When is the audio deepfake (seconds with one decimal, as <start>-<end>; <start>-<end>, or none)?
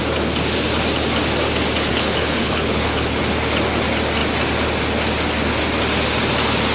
1.9-3.2